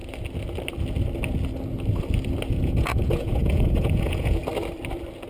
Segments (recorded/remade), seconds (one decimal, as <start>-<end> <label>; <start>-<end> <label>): 0.0-2.5 recorded; 2.5-4.4 remade; 4.4-5.3 recorded